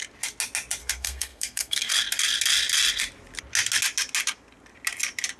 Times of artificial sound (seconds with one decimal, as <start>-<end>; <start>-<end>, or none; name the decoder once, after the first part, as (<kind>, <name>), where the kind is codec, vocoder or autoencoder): 0.8-1.9 (codec, SNAC)